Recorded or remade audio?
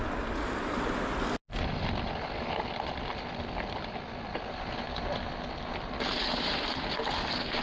recorded